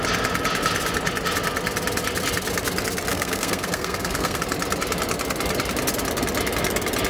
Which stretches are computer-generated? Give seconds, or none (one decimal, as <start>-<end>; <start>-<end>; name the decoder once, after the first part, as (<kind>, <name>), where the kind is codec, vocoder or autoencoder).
3.1-4.4 (codec, SNAC)